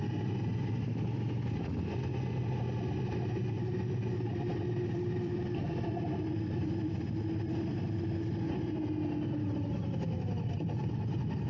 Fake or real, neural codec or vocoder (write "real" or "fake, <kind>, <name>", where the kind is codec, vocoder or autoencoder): real